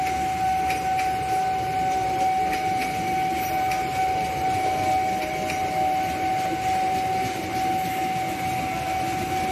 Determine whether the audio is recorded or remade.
recorded